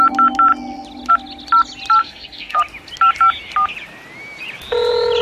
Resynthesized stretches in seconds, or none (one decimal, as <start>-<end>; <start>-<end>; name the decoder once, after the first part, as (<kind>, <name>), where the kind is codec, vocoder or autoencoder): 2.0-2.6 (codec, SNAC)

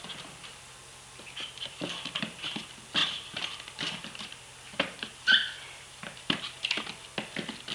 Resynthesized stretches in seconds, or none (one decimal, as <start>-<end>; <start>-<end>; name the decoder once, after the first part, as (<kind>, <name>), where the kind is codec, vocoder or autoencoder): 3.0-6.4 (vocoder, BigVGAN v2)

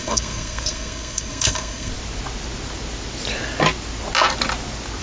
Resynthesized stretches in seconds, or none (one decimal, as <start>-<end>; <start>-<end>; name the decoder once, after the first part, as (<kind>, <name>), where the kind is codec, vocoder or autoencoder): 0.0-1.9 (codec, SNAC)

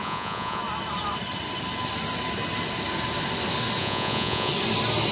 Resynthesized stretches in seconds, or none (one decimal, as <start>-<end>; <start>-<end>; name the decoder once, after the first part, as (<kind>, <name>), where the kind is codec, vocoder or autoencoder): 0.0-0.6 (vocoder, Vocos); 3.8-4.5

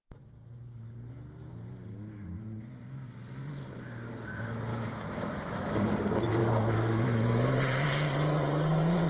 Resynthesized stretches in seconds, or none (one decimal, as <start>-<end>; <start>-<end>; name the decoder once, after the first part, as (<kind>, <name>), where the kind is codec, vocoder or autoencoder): 4.7-5.9 (autoencoder, DAC-VAE); 6.4-7.6

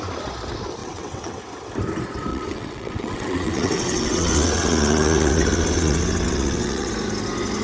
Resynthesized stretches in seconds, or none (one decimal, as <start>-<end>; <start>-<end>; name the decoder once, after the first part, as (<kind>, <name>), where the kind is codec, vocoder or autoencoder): 0.8-1.4 (vocoder, WaveNeXt); 2.3-6.9